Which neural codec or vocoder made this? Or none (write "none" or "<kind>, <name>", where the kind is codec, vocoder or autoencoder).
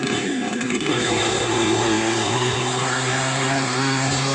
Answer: codec, SNAC